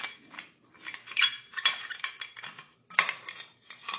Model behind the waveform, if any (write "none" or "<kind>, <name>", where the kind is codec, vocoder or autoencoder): vocoder, BigVGAN v2